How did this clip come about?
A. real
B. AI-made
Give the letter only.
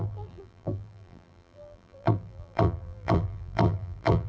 B